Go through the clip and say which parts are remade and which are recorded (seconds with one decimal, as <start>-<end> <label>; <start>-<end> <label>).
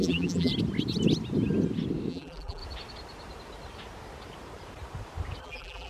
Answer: 0.0-0.5 remade; 0.5-2.1 recorded; 2.1-2.6 remade; 2.6-5.4 recorded; 5.4-5.9 remade